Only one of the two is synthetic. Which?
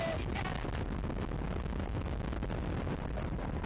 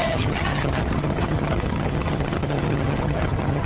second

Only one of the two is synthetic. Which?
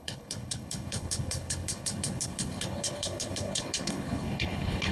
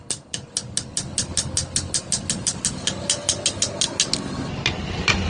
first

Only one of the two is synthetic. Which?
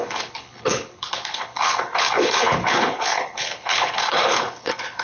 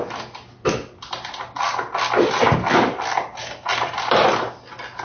first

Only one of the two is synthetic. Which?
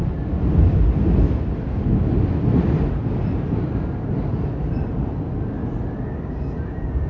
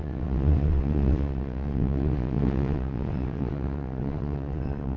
second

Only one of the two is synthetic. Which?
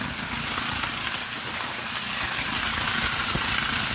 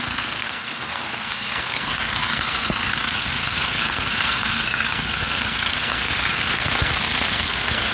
second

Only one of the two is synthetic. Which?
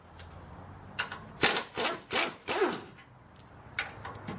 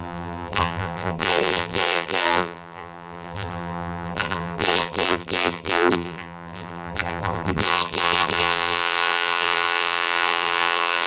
second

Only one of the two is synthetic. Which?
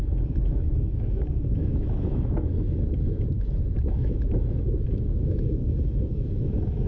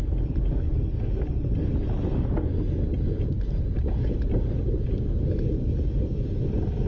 first